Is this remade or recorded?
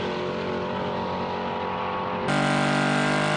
recorded